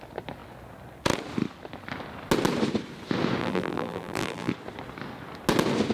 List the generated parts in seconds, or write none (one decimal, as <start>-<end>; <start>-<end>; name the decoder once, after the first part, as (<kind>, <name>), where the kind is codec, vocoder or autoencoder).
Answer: 3.4-4.5 (vocoder, BigVGAN v2)